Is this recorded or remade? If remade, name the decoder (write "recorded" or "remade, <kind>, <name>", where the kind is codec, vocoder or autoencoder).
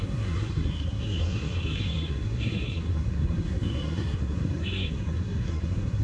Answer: remade, codec, SNAC